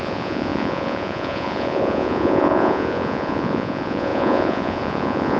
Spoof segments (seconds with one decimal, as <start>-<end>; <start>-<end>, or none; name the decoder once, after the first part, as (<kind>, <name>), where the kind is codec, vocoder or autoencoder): 0.0-5.4 (vocoder, Vocos)

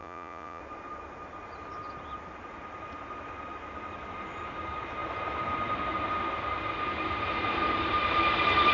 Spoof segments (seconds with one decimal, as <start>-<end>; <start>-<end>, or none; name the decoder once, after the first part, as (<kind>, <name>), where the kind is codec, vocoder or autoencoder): 0.0-0.6 (vocoder, Vocos)